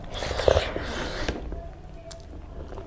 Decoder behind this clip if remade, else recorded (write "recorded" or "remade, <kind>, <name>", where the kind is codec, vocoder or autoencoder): recorded